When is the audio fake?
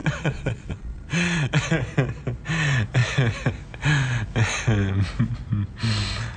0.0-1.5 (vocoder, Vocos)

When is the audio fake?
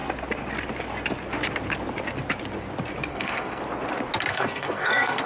3.1-3.6 (codec, SNAC); 4.3-5.3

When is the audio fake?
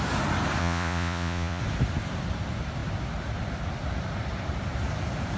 0.6-1.6 (vocoder, Vocos)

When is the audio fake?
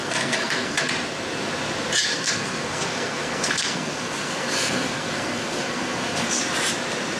0.0-0.9 (codec, SNAC); 2.1-6.4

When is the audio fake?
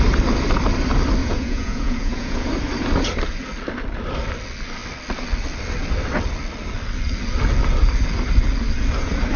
1.2-2.5 (vocoder, Vocos)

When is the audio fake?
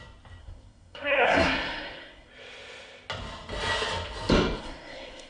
0.4-2.3 (codec, SNAC); 4.6-5.3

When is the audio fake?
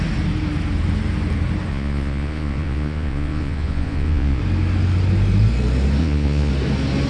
1.7-4.4 (vocoder, Vocos); 6.0-6.5